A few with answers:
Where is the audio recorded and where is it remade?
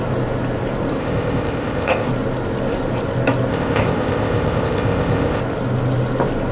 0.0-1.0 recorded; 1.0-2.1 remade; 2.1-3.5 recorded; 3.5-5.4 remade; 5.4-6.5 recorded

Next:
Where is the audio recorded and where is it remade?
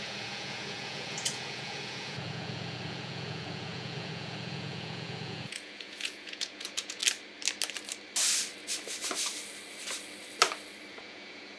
0.0-7.0 remade; 7.0-10.9 recorded; 10.9-11.6 remade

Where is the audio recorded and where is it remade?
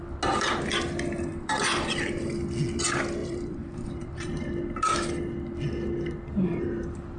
0.0-1.3 recorded; 1.3-2.3 remade; 2.3-3.2 recorded; 3.2-4.4 remade; 4.4-7.2 recorded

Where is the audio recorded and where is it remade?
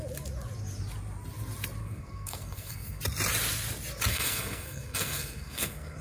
0.0-1.8 recorded; 1.8-3.0 remade; 3.0-4.1 recorded; 4.1-6.0 remade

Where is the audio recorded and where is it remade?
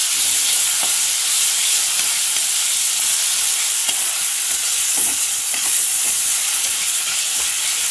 0.0-3.8 recorded; 3.8-7.3 remade; 7.3-7.9 recorded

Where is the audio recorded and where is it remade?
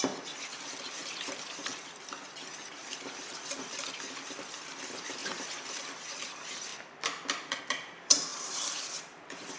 0.0-9.6 remade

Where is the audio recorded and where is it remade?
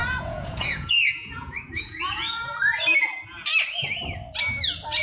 0.0-2.8 remade; 2.8-5.0 recorded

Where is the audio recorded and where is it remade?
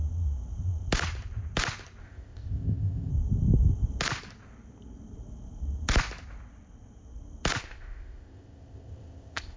0.0-2.0 recorded; 2.0-3.1 remade; 3.1-7.6 recorded; 7.6-9.6 remade